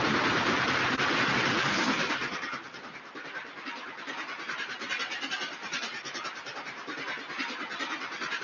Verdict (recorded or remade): recorded